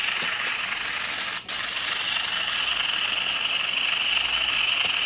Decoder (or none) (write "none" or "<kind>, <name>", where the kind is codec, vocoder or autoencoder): none